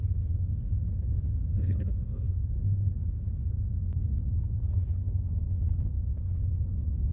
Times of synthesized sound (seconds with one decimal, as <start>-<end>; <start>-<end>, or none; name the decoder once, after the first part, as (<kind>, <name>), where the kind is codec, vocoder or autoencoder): 1.5-2.4 (autoencoder, DAC-VAE)